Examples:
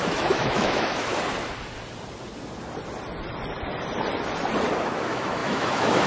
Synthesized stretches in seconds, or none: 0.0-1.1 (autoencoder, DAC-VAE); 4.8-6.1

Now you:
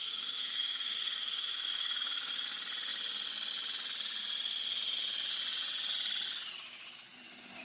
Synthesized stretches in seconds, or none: 0.0-2.3 (autoencoder, DAC-VAE)

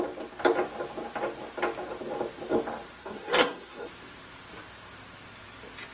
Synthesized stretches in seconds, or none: 3.0-3.9 (codec, SNAC)

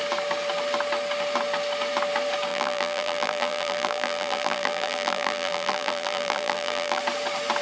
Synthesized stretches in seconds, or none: 2.5-7.0 (vocoder, BigVGAN v2)

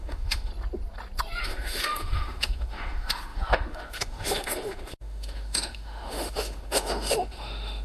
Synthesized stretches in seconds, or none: 0.0-0.5 (autoencoder, DAC-VAE); 1.4-7.8